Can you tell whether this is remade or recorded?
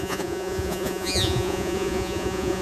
remade